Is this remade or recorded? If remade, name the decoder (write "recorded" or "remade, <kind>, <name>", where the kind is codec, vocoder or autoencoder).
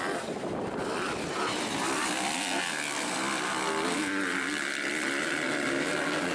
recorded